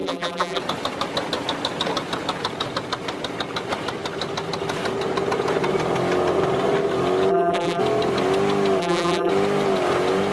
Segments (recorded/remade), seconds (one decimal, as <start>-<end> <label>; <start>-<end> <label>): 0.0-0.6 remade; 0.6-7.3 recorded; 7.3-7.8 remade; 7.8-8.8 recorded; 8.8-9.3 remade; 9.3-10.3 recorded